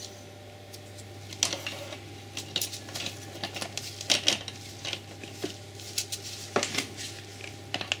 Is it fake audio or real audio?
real